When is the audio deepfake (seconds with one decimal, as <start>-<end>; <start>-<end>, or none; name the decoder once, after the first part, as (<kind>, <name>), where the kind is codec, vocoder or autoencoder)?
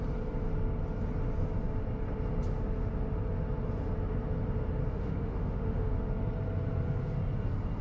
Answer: 4.9-5.9 (autoencoder, DAC-VAE)